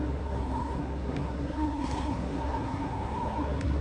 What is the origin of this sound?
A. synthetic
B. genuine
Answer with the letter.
A